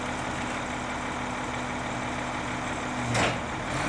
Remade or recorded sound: recorded